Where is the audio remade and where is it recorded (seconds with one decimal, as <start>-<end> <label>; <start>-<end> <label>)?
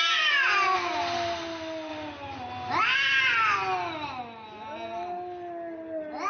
0.0-6.3 recorded